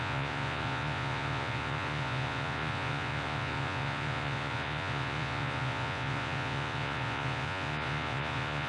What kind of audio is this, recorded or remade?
remade